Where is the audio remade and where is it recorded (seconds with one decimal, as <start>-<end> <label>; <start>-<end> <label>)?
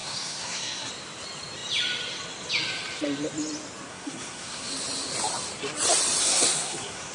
0.0-0.9 remade; 0.9-3.9 recorded; 3.9-4.7 remade; 4.7-6.2 recorded; 6.2-7.1 remade